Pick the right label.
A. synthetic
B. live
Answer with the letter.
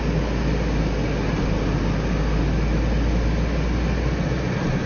B